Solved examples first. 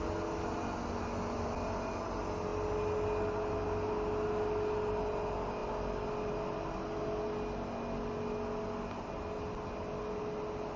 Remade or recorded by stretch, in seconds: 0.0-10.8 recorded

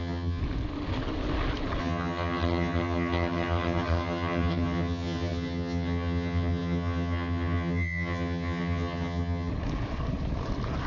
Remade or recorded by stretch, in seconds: 0.0-0.4 remade; 0.4-1.8 recorded; 1.8-9.5 remade; 9.5-10.9 recorded

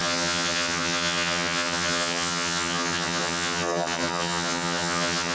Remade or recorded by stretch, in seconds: 0.0-5.3 remade

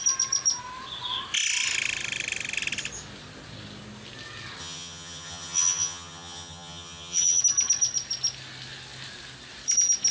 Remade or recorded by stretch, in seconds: 0.0-4.6 recorded; 4.6-7.4 remade; 7.4-10.1 recorded

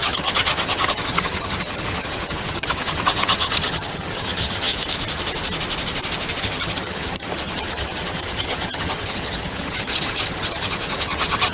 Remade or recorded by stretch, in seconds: 0.0-4.7 remade; 4.7-6.4 recorded; 6.4-11.5 remade